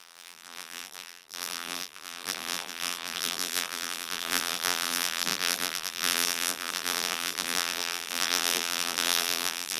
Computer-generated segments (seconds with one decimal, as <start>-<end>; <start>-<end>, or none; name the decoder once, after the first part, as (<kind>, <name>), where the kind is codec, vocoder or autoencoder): 0.0-9.8 (vocoder, BigVGAN v2)